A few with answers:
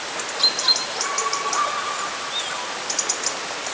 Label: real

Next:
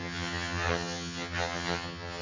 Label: fake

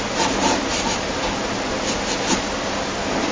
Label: real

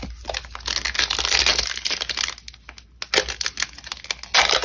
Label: real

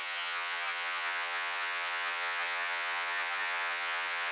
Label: fake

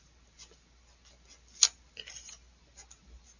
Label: real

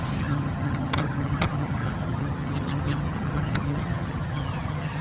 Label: fake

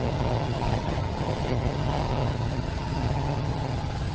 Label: fake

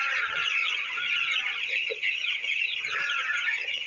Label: fake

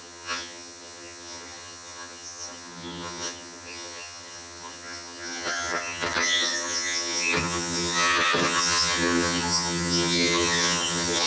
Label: fake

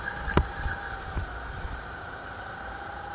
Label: real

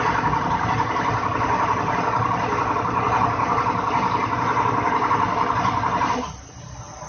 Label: real